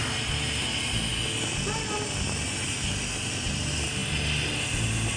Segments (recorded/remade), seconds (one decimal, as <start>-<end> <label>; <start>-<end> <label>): 0.0-5.2 recorded